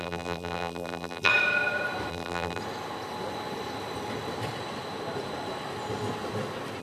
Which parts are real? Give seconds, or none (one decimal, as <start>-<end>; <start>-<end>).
1.3-2.1; 2.6-6.8